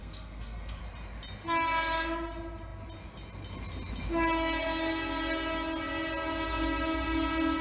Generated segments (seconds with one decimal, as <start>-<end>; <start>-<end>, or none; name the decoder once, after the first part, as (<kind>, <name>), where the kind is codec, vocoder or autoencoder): 0.0-0.8 (codec, SNAC)